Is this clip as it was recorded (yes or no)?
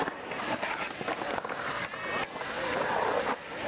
yes